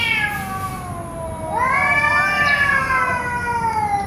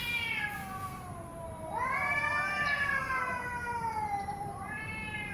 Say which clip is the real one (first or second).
first